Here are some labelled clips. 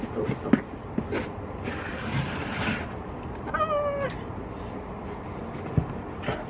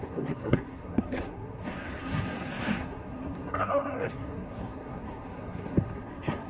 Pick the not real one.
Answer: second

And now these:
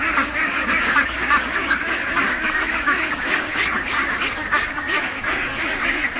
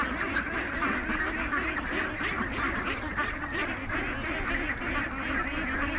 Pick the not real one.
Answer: first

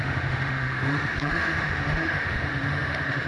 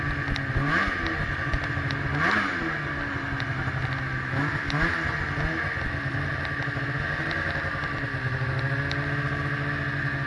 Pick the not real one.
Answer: first